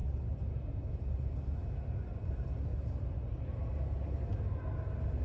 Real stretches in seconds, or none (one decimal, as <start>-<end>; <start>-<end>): 0.0-2.3; 2.7-5.2